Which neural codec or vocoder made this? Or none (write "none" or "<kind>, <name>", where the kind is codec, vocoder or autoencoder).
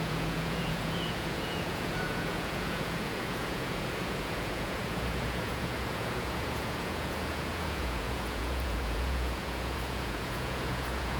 vocoder, Vocos